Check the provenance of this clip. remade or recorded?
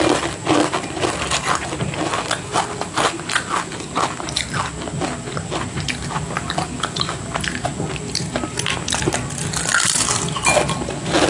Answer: recorded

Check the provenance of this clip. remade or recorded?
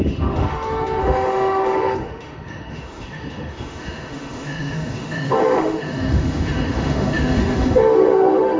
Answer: remade